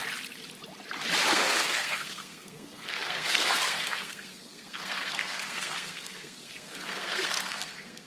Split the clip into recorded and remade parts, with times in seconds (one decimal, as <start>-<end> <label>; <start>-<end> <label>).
0.0-1.3 recorded; 1.3-8.1 remade

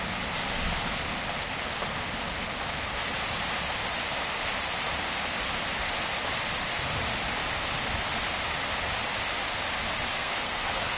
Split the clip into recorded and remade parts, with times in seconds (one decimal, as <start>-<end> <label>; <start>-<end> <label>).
0.0-10.1 recorded; 10.1-11.0 remade

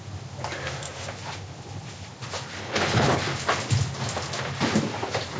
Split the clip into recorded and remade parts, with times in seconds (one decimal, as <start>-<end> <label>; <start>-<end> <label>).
0.0-2.6 recorded; 2.6-3.2 remade; 3.2-5.4 recorded